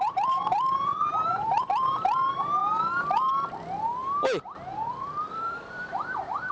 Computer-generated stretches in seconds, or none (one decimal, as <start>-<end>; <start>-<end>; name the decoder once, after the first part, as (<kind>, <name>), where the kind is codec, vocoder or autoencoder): 0.0-2.6 (vocoder, BigVGAN v2); 4.9-6.5